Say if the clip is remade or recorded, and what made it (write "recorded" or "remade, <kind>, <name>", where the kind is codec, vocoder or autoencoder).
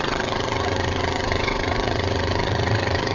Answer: remade, vocoder, WaveNeXt